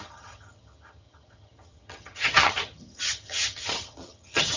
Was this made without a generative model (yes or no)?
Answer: no